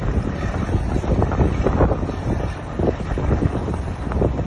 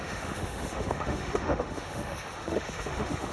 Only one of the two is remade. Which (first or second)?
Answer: second